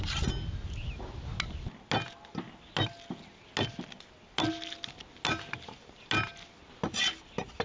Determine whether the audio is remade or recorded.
recorded